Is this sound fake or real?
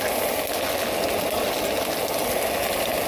real